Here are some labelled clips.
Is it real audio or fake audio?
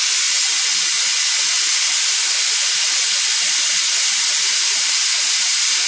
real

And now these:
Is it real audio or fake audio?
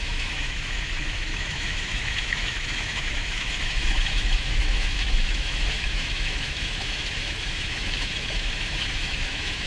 fake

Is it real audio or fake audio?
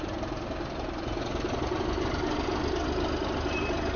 real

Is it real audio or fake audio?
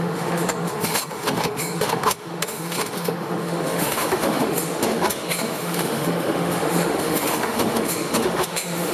fake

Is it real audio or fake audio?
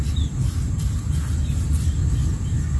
real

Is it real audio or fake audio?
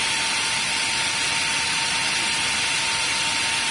real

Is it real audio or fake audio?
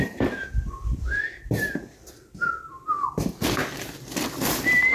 real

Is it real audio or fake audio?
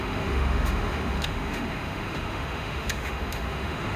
fake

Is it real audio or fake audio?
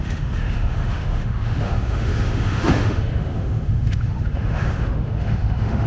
fake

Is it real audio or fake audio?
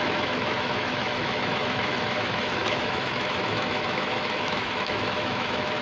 fake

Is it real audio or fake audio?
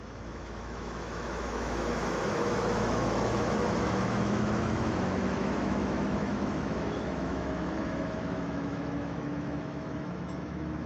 fake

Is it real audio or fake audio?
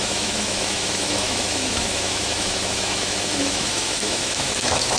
fake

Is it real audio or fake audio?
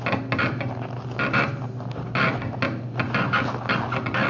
real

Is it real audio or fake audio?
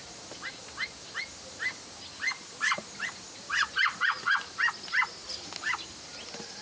real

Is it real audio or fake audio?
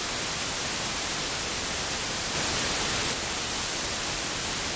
real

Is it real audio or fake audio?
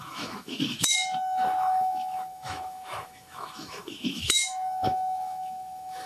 fake